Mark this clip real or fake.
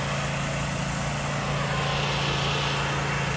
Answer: real